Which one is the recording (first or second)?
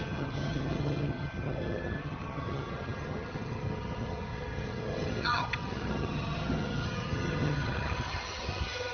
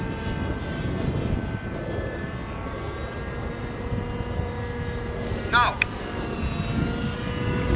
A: second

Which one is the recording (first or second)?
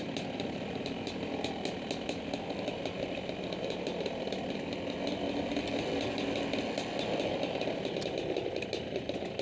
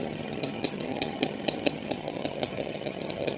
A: first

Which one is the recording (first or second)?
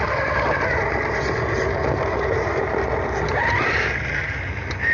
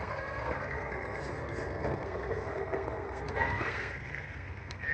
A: first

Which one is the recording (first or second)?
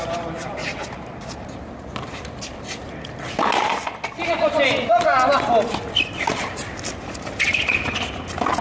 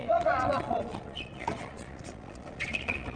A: first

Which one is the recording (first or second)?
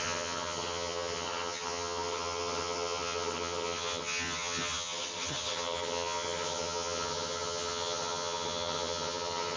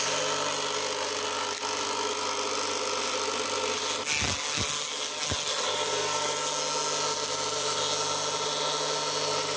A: second